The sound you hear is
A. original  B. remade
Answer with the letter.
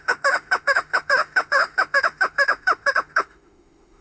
B